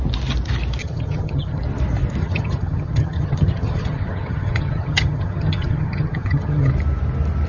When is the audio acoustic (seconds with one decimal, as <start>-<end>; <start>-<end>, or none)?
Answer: 0.0-0.8; 1.6-2.2; 6.7-7.5